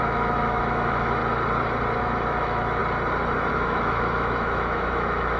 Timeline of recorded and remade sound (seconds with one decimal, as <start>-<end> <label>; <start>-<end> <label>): 0.0-1.2 remade; 1.2-2.0 recorded; 2.0-2.8 remade; 2.8-3.5 recorded; 3.5-5.4 remade